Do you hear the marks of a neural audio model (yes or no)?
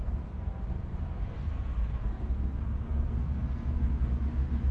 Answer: yes